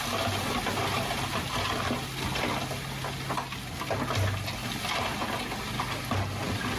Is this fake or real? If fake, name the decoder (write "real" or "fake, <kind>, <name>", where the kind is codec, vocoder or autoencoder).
real